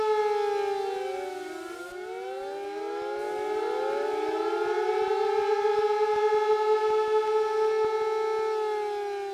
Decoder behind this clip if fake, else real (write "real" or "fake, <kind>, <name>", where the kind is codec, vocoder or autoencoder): real